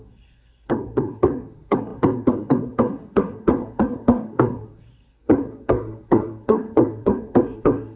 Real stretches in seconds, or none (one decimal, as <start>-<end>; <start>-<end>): none